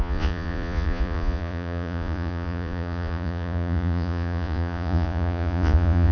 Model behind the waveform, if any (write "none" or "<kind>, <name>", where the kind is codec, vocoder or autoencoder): vocoder, Vocos